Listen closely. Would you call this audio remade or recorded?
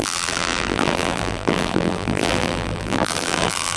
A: remade